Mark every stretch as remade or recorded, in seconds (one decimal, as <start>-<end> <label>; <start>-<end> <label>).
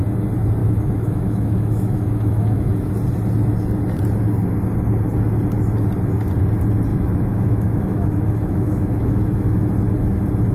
0.0-0.6 recorded; 0.6-2.9 remade; 2.9-6.9 recorded; 6.9-9.7 remade; 9.7-10.5 recorded